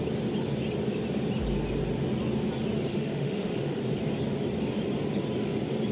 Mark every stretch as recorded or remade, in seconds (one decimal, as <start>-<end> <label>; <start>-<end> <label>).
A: 0.0-2.9 recorded; 2.9-3.8 remade; 3.8-5.9 recorded